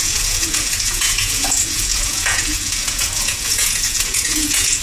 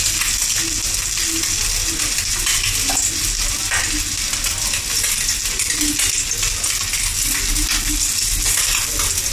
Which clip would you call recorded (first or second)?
second